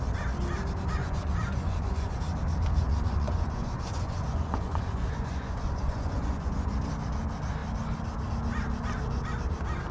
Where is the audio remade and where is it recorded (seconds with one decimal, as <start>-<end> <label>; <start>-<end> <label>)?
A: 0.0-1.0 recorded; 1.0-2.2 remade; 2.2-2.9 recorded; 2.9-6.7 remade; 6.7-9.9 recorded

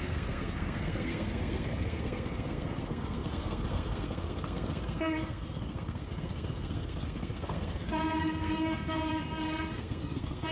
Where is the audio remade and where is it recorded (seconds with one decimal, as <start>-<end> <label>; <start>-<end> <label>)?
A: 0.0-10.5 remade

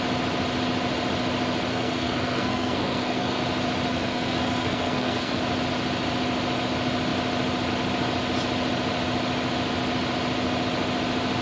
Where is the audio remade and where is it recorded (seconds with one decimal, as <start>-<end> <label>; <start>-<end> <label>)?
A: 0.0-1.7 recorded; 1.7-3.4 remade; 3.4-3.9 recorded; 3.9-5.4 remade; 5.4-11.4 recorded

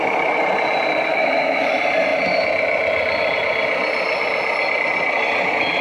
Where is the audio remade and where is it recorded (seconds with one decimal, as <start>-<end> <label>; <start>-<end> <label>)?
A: 0.0-1.1 recorded; 1.1-1.7 remade; 1.7-5.8 recorded